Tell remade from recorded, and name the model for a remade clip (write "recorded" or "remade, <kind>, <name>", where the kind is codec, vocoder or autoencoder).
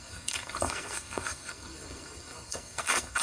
remade, codec, SNAC